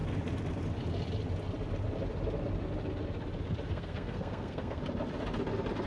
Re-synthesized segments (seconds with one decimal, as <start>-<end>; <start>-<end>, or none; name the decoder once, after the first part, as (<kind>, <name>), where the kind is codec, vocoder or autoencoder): 3.7-4.8 (codec, SNAC)